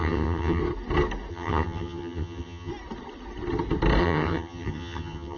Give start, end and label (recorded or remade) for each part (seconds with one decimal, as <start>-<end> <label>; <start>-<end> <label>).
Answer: 0.0-0.6 remade; 0.6-1.3 recorded; 1.3-2.7 remade; 2.7-4.0 recorded; 4.0-5.4 remade